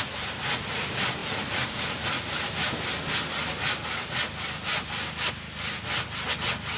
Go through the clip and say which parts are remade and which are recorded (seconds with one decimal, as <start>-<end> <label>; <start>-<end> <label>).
0.0-6.8 recorded